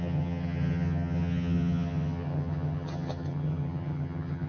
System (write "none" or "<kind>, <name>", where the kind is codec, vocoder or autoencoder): vocoder, HiFi-GAN